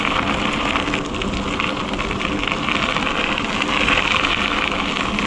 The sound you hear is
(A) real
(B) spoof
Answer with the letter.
A